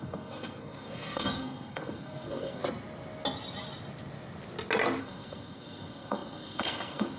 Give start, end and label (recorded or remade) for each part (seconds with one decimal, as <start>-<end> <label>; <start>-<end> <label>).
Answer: 0.0-2.6 remade; 2.6-5.0 recorded; 5.0-7.2 remade

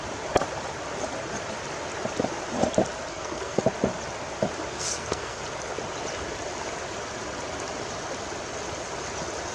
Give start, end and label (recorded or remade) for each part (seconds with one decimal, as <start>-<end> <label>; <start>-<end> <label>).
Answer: 0.0-3.1 recorded; 3.1-3.6 remade; 3.6-4.7 recorded; 4.7-5.4 remade; 5.4-9.5 recorded